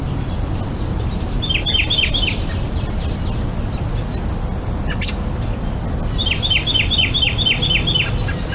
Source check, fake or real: real